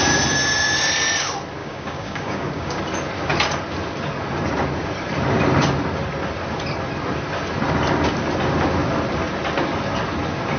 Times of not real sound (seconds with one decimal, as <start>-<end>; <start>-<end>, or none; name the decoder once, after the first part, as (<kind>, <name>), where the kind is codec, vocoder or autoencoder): 1.6-2.8 (codec, DAC)